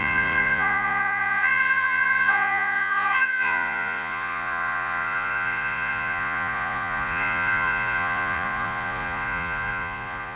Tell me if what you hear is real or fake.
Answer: fake